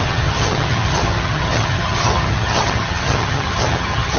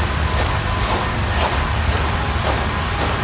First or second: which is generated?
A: first